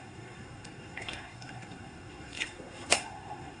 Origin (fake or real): fake